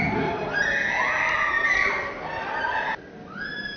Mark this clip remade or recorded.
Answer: recorded